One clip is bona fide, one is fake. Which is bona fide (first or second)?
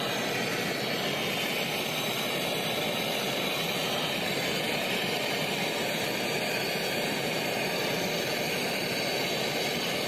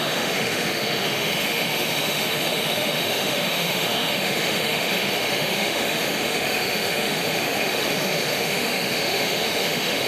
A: first